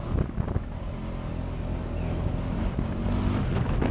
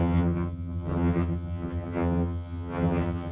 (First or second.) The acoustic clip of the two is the first